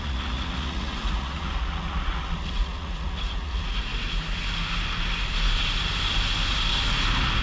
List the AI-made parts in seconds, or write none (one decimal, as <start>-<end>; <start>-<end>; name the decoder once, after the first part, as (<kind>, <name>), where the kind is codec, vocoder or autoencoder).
0.0-3.9 (vocoder, Vocos)